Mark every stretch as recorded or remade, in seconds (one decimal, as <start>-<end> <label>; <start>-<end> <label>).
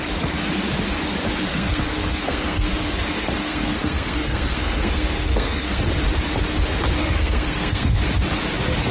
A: 0.0-1.5 recorded; 1.5-5.8 remade; 5.8-7.0 recorded; 7.0-8.0 remade; 8.0-8.9 recorded